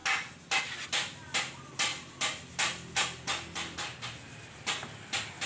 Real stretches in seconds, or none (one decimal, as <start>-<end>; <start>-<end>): 0.0-5.5